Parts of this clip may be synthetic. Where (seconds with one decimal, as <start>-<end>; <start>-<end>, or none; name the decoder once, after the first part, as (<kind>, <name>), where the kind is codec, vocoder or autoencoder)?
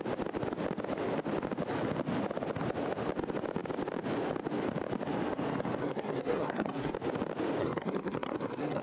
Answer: 5.8-6.9 (codec, SNAC); 7.6-8.8